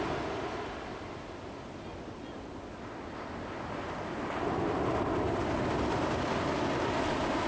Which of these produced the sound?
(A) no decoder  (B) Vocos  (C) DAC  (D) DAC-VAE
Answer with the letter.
A